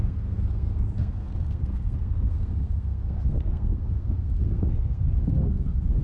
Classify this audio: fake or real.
fake